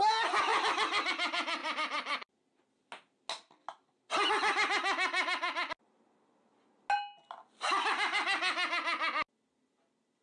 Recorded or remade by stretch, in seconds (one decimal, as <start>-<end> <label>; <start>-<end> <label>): 0.0-1.6 recorded; 1.6-2.6 remade; 2.6-10.2 recorded

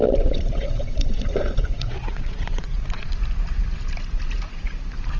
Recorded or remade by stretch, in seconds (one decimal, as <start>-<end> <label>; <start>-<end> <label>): 0.0-3.1 remade; 3.1-5.2 recorded